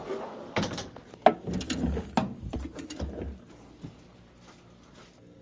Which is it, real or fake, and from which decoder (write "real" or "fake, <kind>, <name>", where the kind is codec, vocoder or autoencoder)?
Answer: real